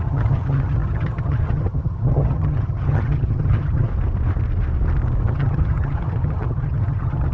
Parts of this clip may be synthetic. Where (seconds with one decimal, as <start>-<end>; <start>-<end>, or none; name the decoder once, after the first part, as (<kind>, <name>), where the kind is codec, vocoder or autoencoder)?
0.0-3.9 (vocoder, HiFi-GAN); 5.2-7.3